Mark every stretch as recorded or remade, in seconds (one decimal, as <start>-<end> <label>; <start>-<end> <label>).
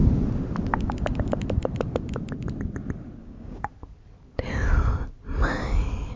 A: 0.0-3.2 recorded; 3.2-3.7 remade; 3.7-6.2 recorded